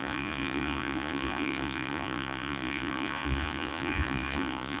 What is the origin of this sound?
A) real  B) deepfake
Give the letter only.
B